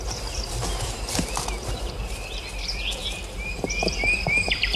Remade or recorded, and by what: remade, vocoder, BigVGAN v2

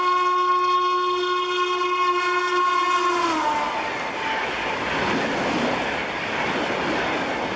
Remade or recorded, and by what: recorded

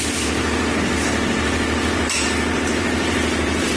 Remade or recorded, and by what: remade, vocoder, BigVGAN v2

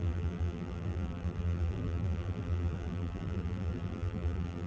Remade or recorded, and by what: remade, vocoder, BigVGAN v2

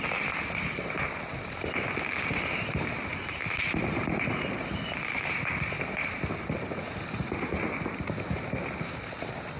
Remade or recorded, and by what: recorded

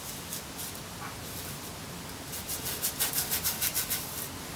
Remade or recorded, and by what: recorded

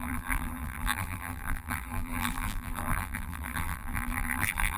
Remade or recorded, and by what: remade, vocoder, BigVGAN v2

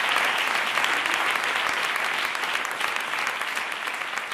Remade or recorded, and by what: recorded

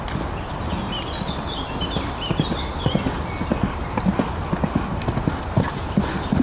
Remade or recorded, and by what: recorded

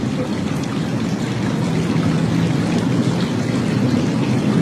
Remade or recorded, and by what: recorded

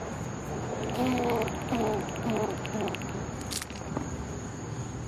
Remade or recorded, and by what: recorded